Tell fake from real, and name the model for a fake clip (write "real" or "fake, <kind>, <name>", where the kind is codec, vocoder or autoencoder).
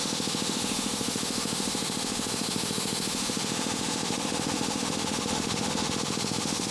fake, autoencoder, DAC-VAE